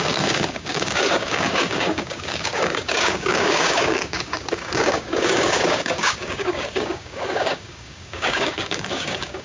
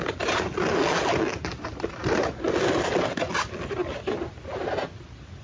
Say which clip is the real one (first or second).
second